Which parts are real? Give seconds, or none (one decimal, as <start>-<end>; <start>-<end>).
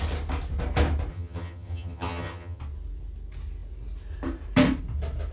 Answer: 0.0-1.1; 2.6-5.3